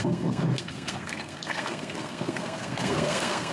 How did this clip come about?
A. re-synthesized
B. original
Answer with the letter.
A